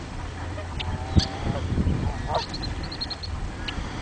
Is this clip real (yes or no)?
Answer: no